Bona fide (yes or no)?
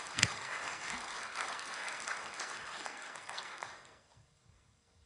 no